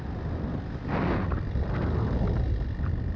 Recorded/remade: recorded